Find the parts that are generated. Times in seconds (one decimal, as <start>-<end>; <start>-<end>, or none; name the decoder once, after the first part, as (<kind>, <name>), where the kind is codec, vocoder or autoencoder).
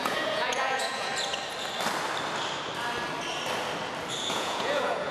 0.0-1.1 (vocoder, Vocos); 4.2-5.1